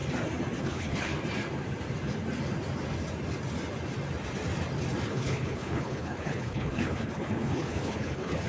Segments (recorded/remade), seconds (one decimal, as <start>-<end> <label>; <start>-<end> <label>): 0.0-0.6 recorded; 0.6-1.1 remade; 1.1-5.1 recorded; 5.1-8.5 remade